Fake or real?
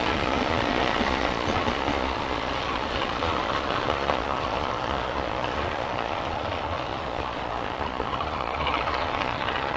fake